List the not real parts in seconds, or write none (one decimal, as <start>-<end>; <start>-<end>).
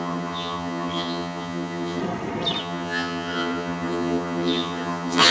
0.0-2.0; 2.6-5.3